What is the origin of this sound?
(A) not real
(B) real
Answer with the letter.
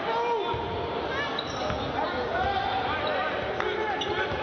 B